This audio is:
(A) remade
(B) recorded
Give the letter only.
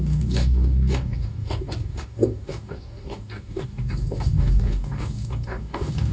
A